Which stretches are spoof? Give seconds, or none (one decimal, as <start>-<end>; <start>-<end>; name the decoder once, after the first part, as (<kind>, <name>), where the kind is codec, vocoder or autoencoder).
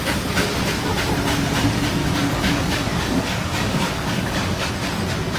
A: 2.0-4.7 (codec, DAC)